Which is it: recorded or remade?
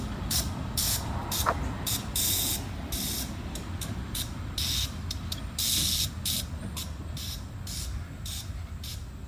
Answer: recorded